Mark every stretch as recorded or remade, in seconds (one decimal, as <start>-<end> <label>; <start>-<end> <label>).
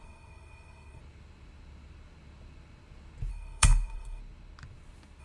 0.0-1.0 remade; 1.0-3.3 recorded; 3.3-4.2 remade; 4.2-5.2 recorded